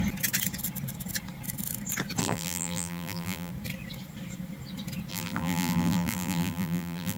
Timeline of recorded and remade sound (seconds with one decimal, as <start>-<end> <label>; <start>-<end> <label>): 0.0-2.2 recorded; 2.2-3.5 remade; 3.5-5.1 recorded; 5.1-7.2 remade